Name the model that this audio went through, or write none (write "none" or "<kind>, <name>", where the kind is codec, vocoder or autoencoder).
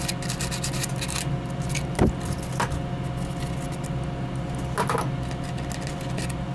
none